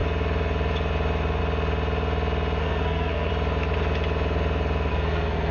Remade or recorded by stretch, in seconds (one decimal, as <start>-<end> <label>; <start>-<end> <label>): 0.0-2.6 recorded; 2.6-3.3 remade; 3.3-4.9 recorded; 4.9-5.5 remade